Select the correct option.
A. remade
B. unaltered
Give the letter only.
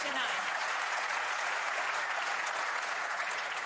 A